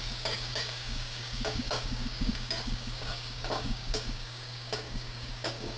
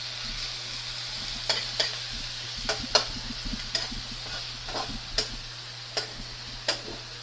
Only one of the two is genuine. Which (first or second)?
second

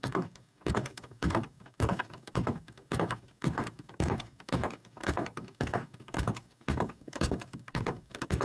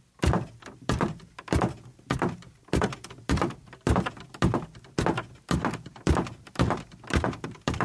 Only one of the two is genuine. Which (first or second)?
second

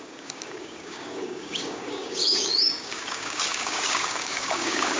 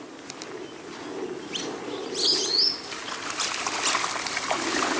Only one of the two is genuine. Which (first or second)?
second